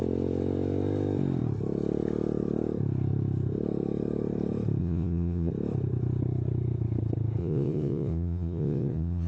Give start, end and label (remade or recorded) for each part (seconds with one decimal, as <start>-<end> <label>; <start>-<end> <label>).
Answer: 0.0-4.8 recorded; 4.8-5.5 remade; 5.5-7.4 recorded; 7.4-9.3 remade